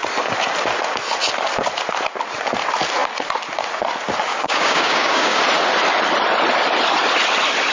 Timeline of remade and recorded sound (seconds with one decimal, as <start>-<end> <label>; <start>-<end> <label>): 0.0-4.3 recorded; 4.3-5.4 remade; 5.4-7.7 recorded